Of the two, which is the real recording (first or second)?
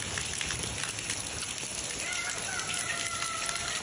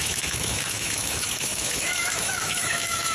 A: first